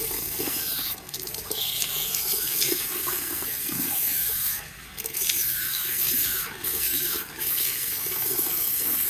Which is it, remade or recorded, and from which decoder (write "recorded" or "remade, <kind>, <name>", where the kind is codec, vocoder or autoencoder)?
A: remade, codec, SNAC